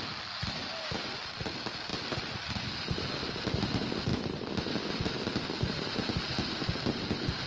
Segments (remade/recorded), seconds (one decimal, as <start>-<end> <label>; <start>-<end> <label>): 0.0-7.5 recorded